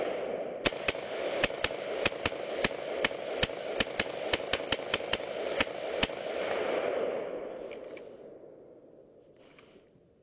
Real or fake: real